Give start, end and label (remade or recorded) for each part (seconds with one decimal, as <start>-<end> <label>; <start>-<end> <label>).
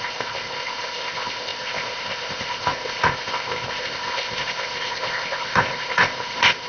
0.0-6.7 remade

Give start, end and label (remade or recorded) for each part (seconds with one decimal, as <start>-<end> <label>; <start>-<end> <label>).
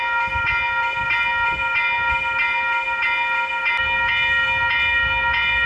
0.0-5.7 recorded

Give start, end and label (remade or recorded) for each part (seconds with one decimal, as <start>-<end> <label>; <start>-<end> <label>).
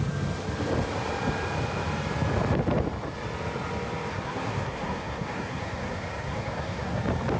0.0-4.1 recorded; 4.1-7.0 remade; 7.0-7.4 recorded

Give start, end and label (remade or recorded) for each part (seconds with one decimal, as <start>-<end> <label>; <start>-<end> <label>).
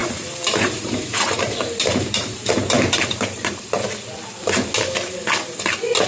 0.0-3.6 remade; 3.6-6.1 recorded